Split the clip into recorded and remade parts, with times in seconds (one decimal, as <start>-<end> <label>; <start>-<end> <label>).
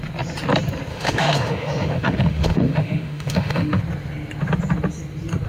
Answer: 0.0-0.9 recorded; 0.9-3.8 remade; 3.8-5.5 recorded